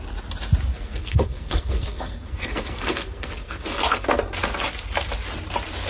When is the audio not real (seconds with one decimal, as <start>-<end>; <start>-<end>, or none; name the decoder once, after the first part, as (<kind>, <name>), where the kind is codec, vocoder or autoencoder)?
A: 0.7-4.2 (codec, SNAC)